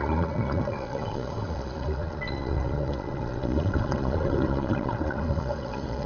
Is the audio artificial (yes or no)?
yes